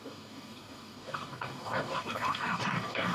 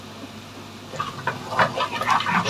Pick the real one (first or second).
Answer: second